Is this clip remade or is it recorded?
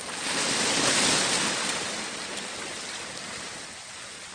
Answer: remade